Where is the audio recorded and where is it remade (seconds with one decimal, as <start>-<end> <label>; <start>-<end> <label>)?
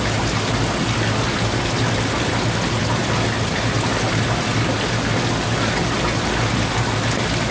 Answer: 0.0-7.5 recorded